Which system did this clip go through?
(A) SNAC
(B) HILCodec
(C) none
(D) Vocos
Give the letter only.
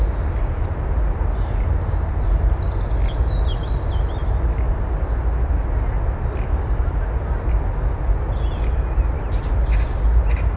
C